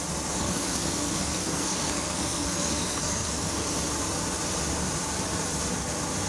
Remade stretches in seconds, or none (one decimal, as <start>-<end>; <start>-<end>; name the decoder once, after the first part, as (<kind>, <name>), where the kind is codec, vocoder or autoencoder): 0.4-3.7 (codec, SNAC)